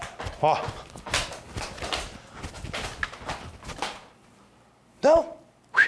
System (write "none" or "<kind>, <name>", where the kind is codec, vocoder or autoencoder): none